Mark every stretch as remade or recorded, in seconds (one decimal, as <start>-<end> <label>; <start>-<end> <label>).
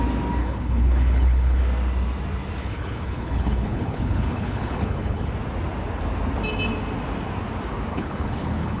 0.0-0.4 recorded; 0.4-1.6 remade; 1.6-2.6 recorded; 2.6-5.3 remade; 5.3-7.9 recorded; 7.9-8.8 remade